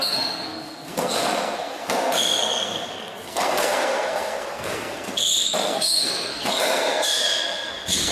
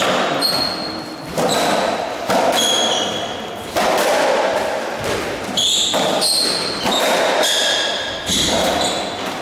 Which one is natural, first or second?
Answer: second